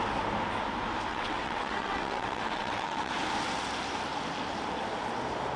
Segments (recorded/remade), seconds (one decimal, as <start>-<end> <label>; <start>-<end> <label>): 0.0-1.1 recorded; 1.1-3.1 remade; 3.1-5.6 recorded